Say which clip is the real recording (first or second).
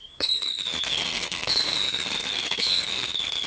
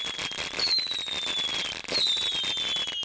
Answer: second